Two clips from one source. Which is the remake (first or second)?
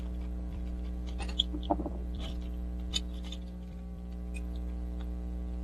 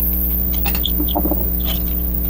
first